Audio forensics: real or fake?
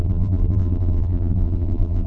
fake